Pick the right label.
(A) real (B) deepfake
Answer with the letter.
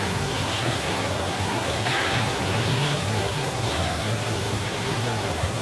B